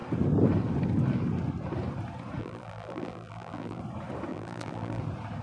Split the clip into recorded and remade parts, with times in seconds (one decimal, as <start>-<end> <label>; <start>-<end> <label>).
0.0-2.4 recorded; 2.4-3.8 remade; 3.8-4.3 recorded; 4.3-5.0 remade; 5.0-5.4 recorded